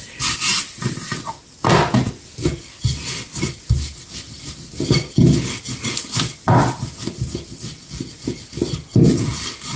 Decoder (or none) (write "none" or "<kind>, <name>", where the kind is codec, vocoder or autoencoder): none